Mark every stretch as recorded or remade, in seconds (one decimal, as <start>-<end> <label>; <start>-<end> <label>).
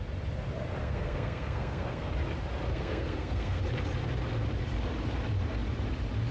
0.0-0.8 recorded; 0.8-2.1 remade; 2.1-2.7 recorded; 2.7-3.6 remade; 3.6-6.3 recorded